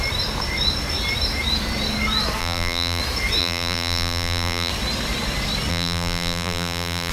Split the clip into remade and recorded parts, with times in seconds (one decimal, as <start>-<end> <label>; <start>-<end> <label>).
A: 0.0-2.4 recorded; 2.4-3.0 remade; 3.0-3.4 recorded; 3.4-4.7 remade; 4.7-5.7 recorded; 5.7-7.1 remade